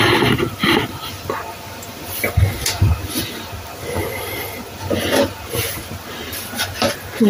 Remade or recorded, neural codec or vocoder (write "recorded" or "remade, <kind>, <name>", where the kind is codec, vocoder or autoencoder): recorded